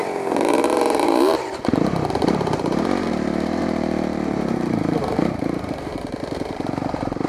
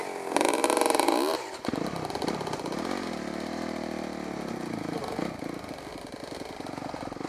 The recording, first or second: second